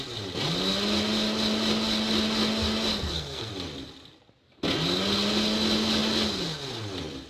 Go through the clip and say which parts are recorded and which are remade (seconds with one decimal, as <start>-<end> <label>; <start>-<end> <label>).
0.0-2.9 recorded; 2.9-3.5 remade; 3.5-7.3 recorded